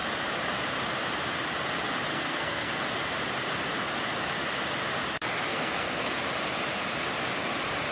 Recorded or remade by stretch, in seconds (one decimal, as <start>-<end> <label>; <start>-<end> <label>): 0.0-2.1 recorded; 2.1-2.8 remade; 2.8-5.5 recorded; 5.5-6.1 remade; 6.1-7.9 recorded